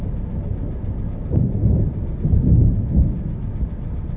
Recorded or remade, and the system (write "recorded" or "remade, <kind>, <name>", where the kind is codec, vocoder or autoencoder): recorded